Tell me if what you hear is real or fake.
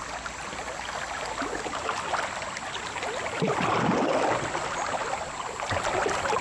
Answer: real